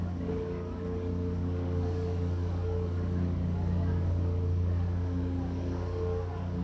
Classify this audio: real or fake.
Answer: fake